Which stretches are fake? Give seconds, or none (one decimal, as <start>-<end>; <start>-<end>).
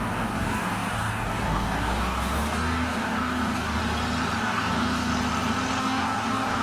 0.0-3.8; 4.4-5.1; 5.8-6.6